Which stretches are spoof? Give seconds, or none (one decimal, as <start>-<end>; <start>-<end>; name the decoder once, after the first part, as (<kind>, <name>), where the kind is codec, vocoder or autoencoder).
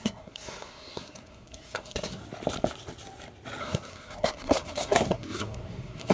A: 0.0-2.2 (codec, SNAC); 3.6-6.1